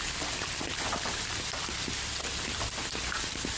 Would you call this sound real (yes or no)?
yes